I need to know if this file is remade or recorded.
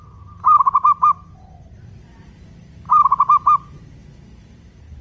recorded